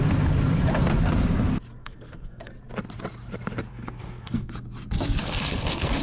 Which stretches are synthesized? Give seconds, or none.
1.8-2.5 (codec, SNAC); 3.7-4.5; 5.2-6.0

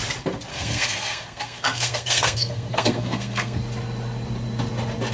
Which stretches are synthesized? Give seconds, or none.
0.5-3.6 (codec, SNAC)

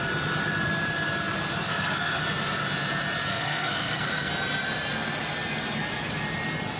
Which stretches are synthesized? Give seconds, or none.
1.6-2.2 (codec, SNAC); 3.3-4.3

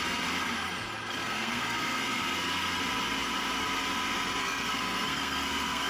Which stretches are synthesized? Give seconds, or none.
1.2-2.8 (codec, SNAC); 4.4-5.9

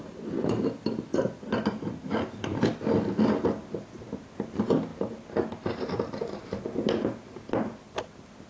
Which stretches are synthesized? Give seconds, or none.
none